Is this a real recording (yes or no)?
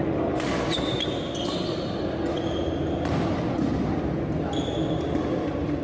yes